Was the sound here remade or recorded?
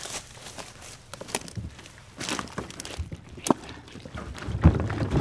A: remade